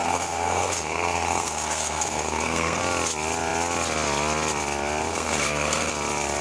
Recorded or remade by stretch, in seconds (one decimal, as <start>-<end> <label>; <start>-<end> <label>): 0.0-2.8 remade; 2.8-5.1 recorded; 5.1-5.9 remade; 5.9-6.4 recorded